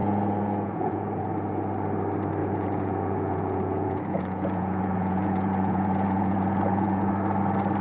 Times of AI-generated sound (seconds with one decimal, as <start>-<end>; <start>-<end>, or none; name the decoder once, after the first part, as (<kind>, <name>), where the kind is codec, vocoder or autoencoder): 0.0-1.2 (vocoder, Vocos); 2.4-7.1